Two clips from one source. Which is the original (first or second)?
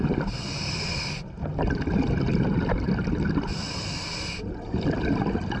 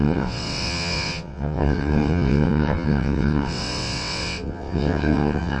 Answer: first